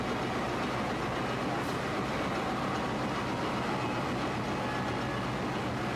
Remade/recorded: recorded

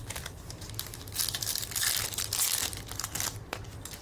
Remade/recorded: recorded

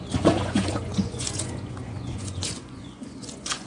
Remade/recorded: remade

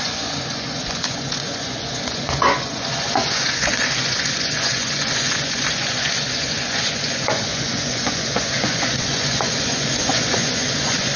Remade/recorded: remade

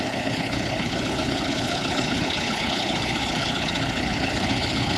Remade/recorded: remade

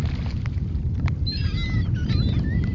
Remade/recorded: recorded